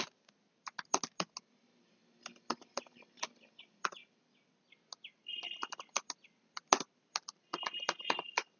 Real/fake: real